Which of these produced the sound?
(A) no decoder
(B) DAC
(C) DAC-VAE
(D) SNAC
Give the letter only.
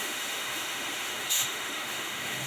C